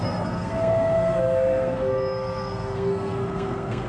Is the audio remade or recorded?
remade